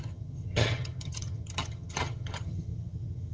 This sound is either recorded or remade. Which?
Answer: remade